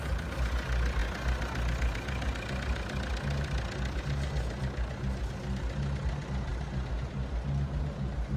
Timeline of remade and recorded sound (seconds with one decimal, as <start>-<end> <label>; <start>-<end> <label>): 0.0-8.4 recorded